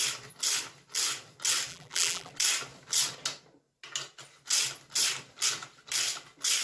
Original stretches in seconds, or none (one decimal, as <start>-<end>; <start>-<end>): 0.0-1.7; 2.3-6.6

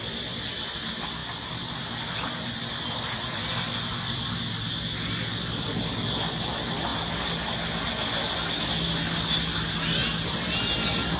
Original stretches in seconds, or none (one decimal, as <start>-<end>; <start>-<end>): 0.0-11.2

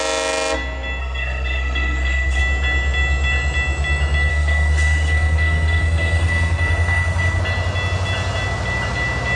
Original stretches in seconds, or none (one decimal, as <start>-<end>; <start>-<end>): 0.0-1.0; 2.4-4.3; 7.4-9.4

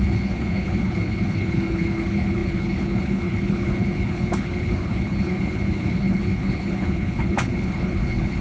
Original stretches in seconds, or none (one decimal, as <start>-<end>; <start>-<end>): none

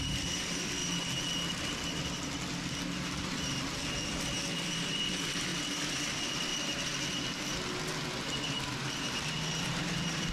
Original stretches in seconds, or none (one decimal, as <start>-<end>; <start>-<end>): 0.8-3.9; 5.5-6.1; 6.5-9.6